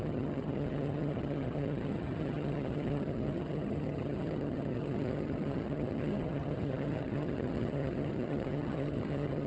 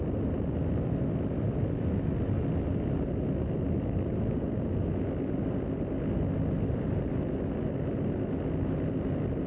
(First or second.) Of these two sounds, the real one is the second